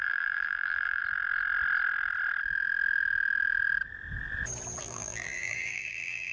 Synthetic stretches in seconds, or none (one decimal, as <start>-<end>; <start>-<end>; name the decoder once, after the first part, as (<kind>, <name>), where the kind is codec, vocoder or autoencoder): 0.0-1.0 (vocoder, BigVGAN v2); 4.8-6.3